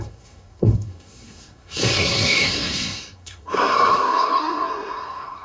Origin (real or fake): fake